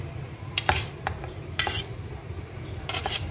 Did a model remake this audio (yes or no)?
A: yes